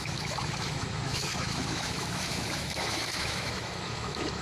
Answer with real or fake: fake